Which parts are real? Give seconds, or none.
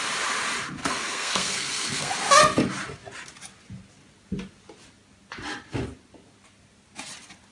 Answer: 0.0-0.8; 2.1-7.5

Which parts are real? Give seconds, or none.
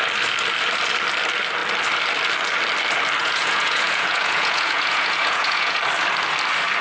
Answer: 0.0-3.2; 5.8-6.8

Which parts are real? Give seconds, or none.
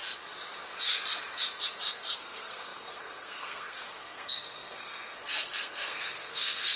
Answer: 0.0-1.9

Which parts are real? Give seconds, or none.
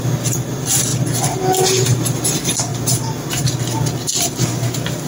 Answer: 0.0-5.1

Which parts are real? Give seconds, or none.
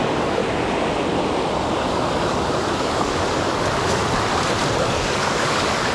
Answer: 0.4-1.5; 4.0-4.8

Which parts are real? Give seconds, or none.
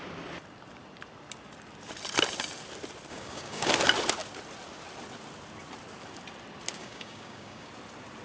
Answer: 0.0-3.1; 3.7-6.8; 7.7-8.2